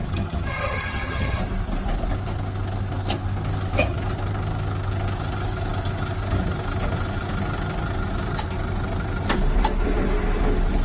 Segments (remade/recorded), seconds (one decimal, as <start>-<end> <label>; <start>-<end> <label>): 0.0-1.4 remade; 1.4-10.8 recorded

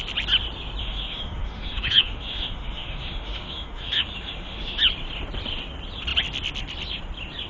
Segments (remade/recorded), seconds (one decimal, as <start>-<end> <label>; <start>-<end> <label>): 0.0-0.8 recorded; 0.8-4.8 remade; 4.8-7.5 recorded

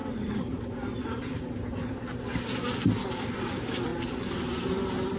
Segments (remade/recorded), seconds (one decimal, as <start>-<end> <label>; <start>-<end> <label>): 0.0-5.2 recorded

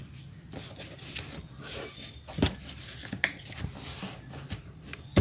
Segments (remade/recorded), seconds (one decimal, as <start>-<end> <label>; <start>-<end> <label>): 0.0-5.2 recorded